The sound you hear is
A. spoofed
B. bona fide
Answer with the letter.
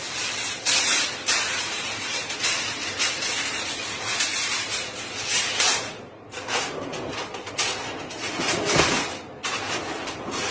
B